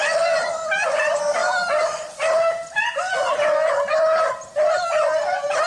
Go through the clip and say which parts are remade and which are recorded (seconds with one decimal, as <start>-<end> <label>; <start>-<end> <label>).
0.0-5.7 recorded